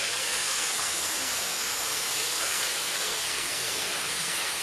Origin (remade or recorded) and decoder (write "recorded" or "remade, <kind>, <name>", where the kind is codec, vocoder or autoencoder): remade, codec, SNAC